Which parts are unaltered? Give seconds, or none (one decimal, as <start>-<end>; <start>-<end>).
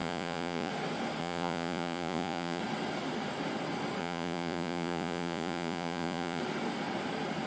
0.7-1.2; 2.6-4.0; 6.4-7.5